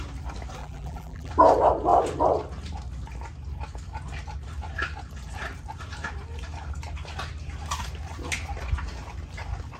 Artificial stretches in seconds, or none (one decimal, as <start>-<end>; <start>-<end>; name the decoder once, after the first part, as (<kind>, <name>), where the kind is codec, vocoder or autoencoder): 0.6-1.3 (vocoder, BigVGAN v2)